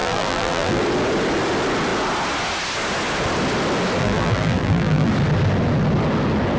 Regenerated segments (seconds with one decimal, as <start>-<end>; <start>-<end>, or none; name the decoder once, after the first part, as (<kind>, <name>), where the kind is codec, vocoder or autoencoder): 0.0-0.8 (vocoder, BigVGAN v2); 4.0-5.1